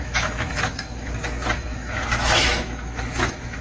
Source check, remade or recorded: remade